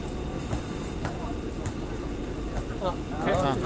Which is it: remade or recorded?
recorded